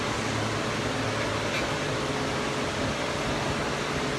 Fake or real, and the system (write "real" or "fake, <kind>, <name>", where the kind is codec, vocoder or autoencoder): real